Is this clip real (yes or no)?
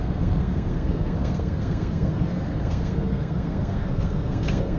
no